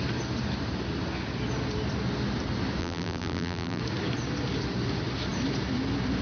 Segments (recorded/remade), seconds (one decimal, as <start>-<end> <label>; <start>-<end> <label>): 0.0-2.8 recorded; 2.8-3.8 remade; 3.8-6.2 recorded